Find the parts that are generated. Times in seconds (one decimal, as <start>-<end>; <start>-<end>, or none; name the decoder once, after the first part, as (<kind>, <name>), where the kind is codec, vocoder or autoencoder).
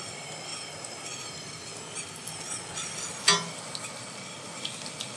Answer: none